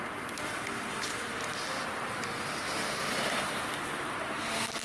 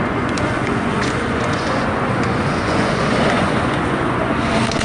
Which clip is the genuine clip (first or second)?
first